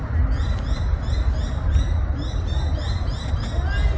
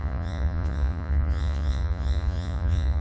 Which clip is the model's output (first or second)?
second